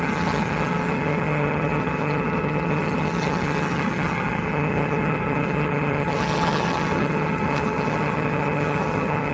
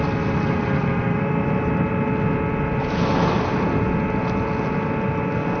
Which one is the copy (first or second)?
first